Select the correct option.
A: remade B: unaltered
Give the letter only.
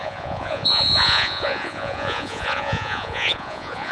A